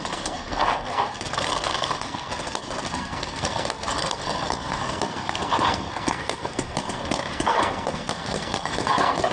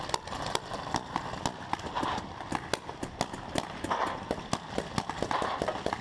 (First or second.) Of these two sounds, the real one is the second